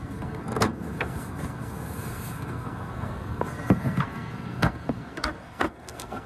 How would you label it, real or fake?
fake